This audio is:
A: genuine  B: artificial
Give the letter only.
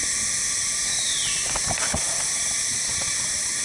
A